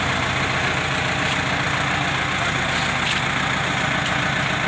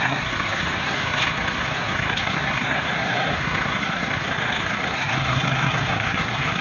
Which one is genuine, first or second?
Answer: first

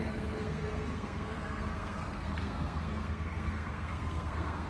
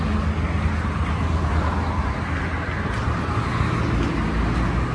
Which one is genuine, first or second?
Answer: second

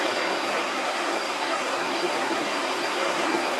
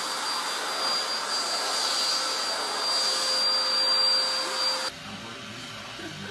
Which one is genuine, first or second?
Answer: second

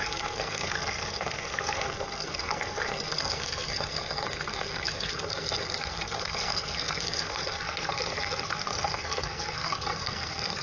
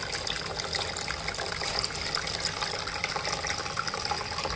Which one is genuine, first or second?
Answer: second